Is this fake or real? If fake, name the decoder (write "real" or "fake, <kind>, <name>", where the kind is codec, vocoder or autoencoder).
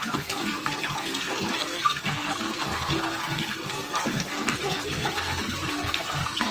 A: fake, codec, SNAC